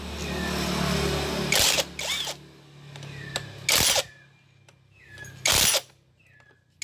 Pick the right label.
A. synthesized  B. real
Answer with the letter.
B